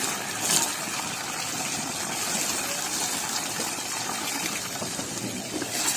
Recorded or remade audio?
recorded